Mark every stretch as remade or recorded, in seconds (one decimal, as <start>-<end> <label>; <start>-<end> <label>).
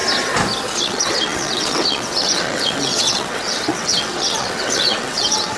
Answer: 0.0-0.8 recorded; 0.8-5.6 remade